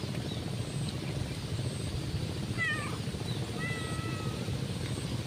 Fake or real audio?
real